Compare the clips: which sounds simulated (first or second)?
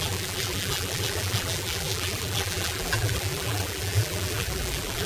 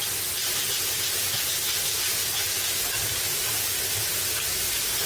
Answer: first